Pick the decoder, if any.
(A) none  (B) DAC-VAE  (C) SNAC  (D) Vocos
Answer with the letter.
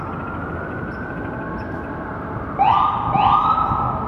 A